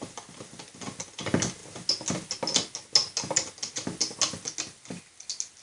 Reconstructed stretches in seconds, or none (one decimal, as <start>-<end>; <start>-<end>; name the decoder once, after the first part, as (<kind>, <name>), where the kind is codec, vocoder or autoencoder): none